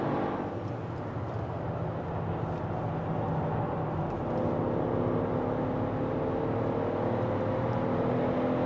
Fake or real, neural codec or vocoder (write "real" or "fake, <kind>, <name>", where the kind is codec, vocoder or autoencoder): real